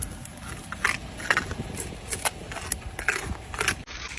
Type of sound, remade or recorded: recorded